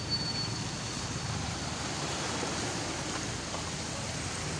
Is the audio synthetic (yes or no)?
no